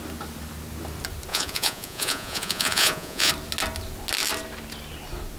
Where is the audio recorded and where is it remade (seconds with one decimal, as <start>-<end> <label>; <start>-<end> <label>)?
0.0-1.3 recorded; 1.3-3.3 remade; 3.3-5.4 recorded